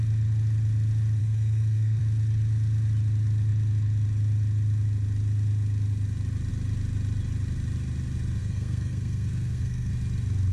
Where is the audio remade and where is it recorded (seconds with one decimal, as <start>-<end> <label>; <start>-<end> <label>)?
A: 0.0-1.2 recorded; 1.2-2.0 remade; 2.0-8.4 recorded; 8.4-9.9 remade; 9.9-10.5 recorded